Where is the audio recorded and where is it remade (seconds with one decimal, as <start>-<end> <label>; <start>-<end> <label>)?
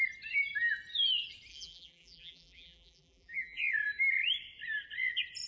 0.0-1.5 recorded; 1.5-3.6 remade; 3.6-5.5 recorded